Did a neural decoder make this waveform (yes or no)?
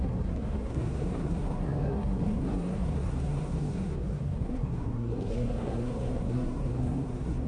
yes